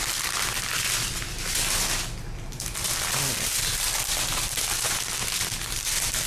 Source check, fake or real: real